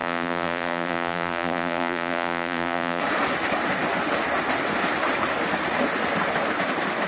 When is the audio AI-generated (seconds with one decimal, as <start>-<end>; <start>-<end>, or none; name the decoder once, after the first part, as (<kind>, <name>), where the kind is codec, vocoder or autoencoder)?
0.0-3.0 (vocoder, BigVGAN v2)